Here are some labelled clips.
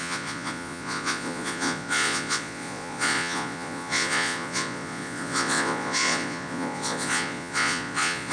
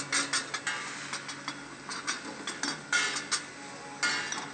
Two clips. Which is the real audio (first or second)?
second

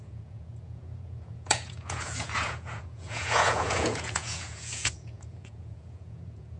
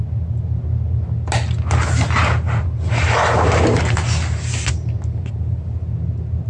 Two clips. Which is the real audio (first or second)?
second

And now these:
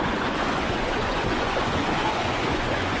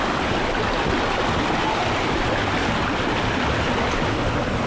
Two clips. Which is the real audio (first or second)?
second